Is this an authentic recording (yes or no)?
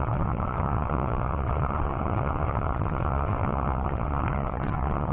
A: no